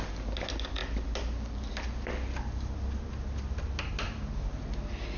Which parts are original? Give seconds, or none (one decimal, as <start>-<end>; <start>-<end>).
0.0-5.2